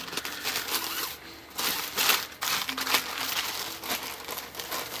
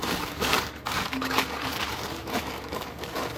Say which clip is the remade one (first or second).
second